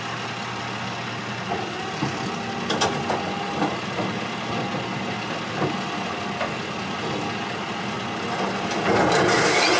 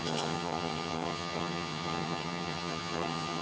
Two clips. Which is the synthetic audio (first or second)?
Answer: second